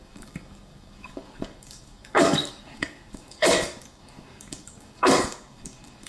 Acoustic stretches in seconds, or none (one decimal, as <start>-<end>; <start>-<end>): none